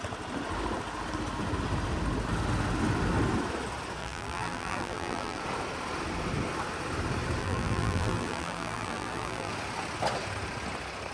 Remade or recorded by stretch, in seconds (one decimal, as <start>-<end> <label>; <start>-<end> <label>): 0.0-4.0 recorded; 4.0-5.4 remade; 5.4-7.4 recorded; 7.4-9.5 remade; 9.5-11.1 recorded